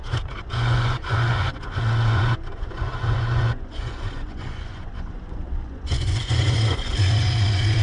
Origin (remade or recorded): remade